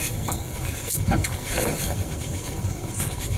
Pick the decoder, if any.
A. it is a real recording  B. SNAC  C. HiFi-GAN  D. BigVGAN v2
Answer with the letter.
B